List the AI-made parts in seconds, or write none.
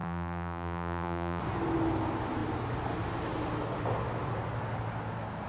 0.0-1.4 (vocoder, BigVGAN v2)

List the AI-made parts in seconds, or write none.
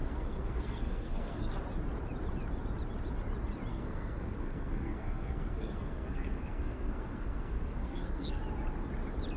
0.0-1.5 (codec, SNAC); 3.7-8.4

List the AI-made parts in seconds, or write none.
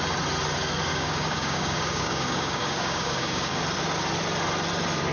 0.9-3.6 (codec, DAC)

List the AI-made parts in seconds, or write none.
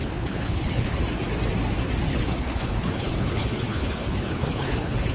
0.0-1.0 (codec, HILCodec); 2.1-5.1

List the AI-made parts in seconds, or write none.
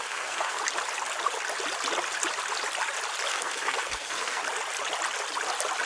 0.0-0.6 (codec, SNAC); 3.3-4.4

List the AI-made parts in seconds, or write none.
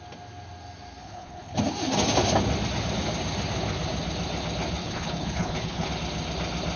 1.0-1.6 (codec, HILCodec); 4.8-5.9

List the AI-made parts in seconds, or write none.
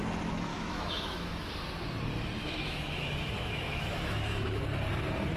0.5-1.5 (autoencoder, DAC-VAE); 2.4-4.6